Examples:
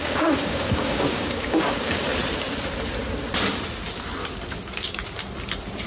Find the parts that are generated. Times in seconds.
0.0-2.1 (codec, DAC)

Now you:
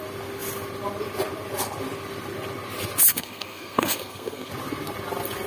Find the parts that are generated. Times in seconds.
3.1-4.5 (codec, SNAC)

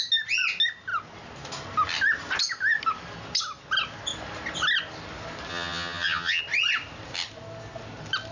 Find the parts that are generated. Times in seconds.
5.5-6.4 (vocoder, HiFi-GAN)

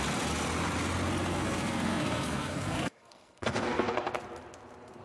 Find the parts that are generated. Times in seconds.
1.3-4.1 (codec, SNAC)

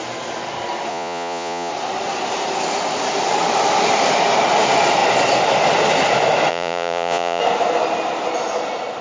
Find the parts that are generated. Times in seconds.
0.9-1.7 (vocoder, Vocos); 6.5-7.4

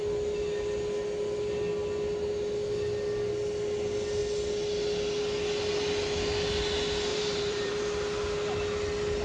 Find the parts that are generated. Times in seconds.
7.1-7.7 (vocoder, BigVGAN v2)